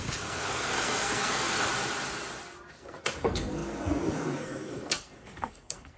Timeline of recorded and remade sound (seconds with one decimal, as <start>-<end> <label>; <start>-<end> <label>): 0.0-1.7 remade; 1.7-2.7 recorded; 2.7-6.0 remade